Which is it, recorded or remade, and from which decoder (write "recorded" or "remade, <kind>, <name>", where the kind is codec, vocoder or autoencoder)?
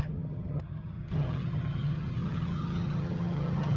remade, vocoder, HiFi-GAN